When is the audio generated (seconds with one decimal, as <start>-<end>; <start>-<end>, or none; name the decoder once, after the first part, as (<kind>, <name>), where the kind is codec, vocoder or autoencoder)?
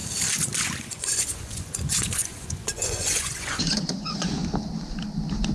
0.8-4.4 (vocoder, Vocos)